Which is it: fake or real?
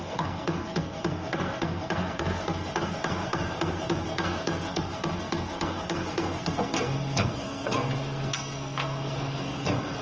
fake